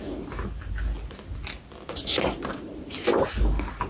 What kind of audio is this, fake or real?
real